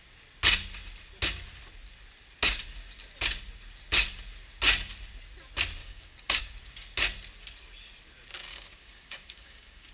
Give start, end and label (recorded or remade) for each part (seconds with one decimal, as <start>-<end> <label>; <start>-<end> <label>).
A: 0.0-5.8 recorded; 5.8-6.4 remade; 6.4-8.5 recorded; 8.5-9.9 remade